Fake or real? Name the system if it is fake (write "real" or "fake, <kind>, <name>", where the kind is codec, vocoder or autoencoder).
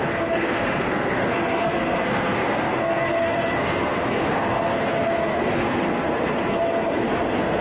fake, codec, SNAC